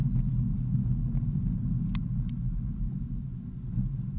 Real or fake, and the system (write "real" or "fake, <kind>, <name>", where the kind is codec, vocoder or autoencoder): real